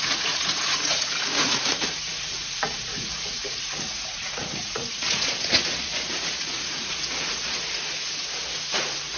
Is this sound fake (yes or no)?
yes